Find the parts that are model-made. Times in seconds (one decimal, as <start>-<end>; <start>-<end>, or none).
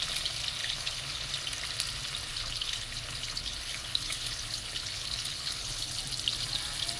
0.6-1.3; 2.3-6.0